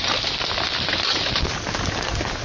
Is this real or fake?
real